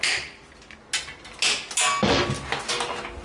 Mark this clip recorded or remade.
recorded